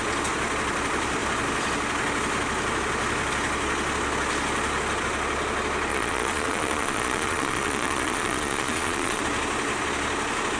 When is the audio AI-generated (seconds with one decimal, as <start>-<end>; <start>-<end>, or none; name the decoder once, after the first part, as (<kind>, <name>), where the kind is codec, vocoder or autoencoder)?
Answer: 5.9-9.2 (vocoder, Vocos)